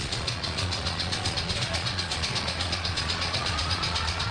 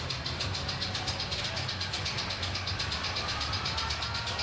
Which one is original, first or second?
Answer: second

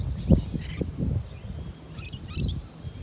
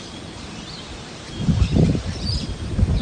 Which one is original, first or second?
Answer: first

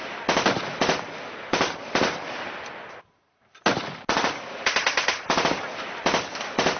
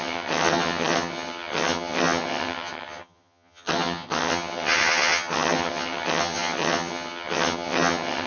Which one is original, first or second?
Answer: first